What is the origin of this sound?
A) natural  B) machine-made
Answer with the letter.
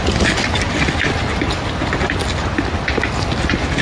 A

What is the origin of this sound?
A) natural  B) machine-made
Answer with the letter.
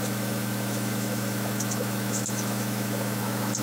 B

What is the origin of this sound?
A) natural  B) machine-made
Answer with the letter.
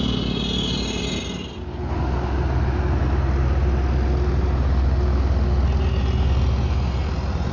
A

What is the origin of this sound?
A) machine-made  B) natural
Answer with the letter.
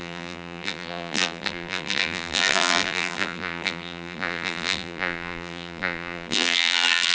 A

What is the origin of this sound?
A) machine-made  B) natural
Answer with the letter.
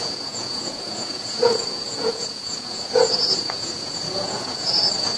A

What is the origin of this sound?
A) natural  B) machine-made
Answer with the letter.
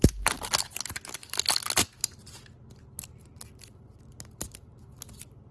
A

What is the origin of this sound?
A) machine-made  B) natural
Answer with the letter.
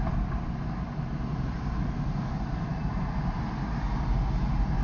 B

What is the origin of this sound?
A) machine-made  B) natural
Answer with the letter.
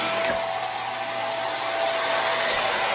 B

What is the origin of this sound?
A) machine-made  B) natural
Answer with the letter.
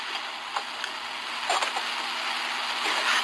B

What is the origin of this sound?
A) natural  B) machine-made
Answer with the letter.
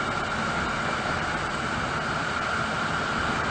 A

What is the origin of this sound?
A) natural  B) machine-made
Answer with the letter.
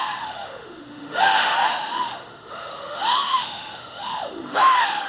B